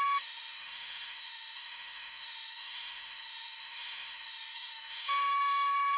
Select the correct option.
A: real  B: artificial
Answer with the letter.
B